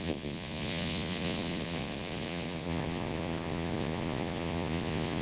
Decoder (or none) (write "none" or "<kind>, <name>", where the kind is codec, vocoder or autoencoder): vocoder, Vocos